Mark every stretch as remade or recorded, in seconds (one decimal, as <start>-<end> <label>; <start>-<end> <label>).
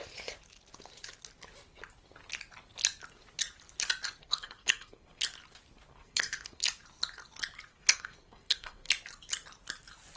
0.0-4.2 recorded; 4.2-5.2 remade; 5.2-5.9 recorded; 5.9-6.6 remade; 6.6-7.7 recorded; 7.7-8.9 remade; 8.9-10.2 recorded